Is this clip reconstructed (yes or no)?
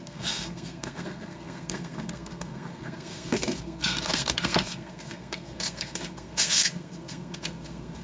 yes